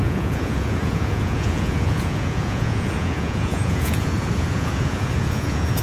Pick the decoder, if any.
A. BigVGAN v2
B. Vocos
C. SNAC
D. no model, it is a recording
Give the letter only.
B